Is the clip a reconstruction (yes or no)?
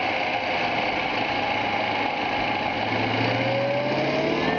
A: no